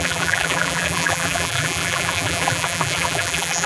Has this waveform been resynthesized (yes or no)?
yes